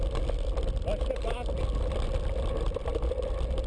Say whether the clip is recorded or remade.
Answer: recorded